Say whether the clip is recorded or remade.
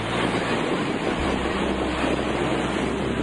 remade